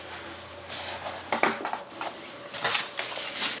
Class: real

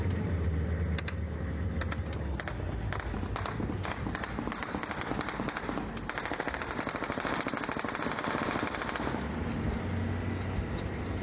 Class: real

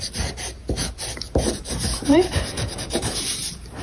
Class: fake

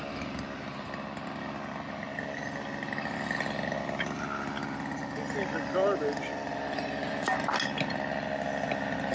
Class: real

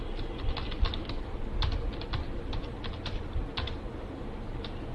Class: real